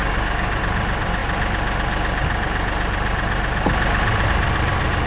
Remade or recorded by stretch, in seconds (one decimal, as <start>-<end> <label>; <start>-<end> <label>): 0.0-0.6 remade; 0.6-5.1 recorded